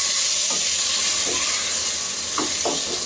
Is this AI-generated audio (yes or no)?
no